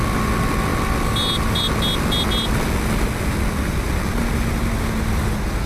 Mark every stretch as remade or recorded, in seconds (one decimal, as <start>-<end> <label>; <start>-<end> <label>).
0.0-5.7 recorded